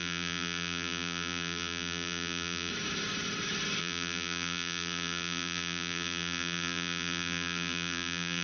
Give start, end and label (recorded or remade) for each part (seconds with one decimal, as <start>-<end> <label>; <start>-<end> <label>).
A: 0.0-2.7 remade; 2.7-3.8 recorded; 3.8-8.4 remade